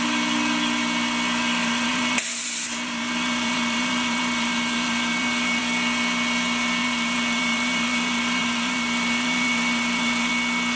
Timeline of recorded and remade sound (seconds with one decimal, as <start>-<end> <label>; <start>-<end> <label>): 0.0-1.6 recorded; 1.6-5.6 remade; 5.6-6.8 recorded; 6.8-10.3 remade; 10.3-10.8 recorded